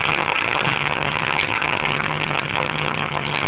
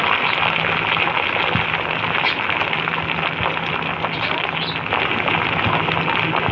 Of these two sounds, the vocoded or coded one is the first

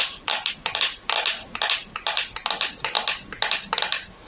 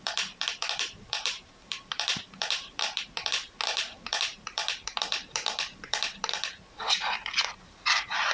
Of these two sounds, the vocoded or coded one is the second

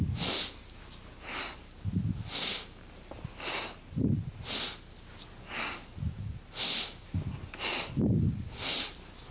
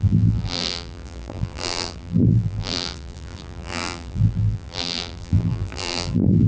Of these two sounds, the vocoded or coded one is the second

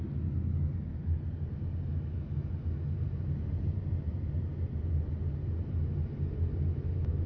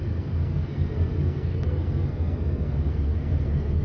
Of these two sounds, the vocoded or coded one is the second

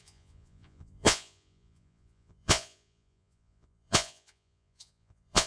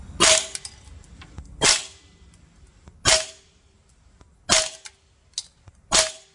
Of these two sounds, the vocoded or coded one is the first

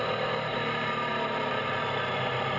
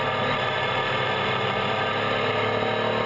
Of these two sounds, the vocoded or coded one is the first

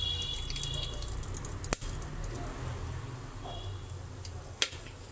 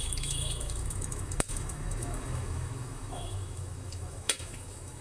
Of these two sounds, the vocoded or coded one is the second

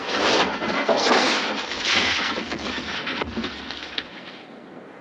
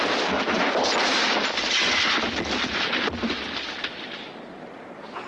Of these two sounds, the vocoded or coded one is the first